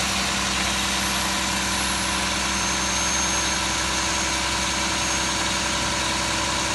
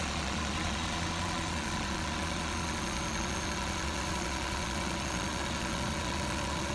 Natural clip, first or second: first